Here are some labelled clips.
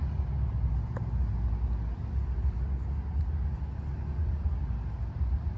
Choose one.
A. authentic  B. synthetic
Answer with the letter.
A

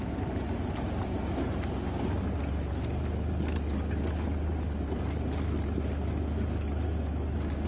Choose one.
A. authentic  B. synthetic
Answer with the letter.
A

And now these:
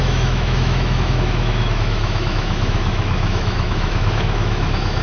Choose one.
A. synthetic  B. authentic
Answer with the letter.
A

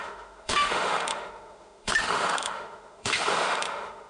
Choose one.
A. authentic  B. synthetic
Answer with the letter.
B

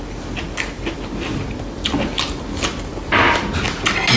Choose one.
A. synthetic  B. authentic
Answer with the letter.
B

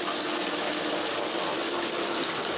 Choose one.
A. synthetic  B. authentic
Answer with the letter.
B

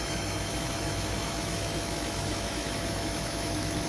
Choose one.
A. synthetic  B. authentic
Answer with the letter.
A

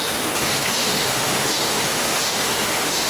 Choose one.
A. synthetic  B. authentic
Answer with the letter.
A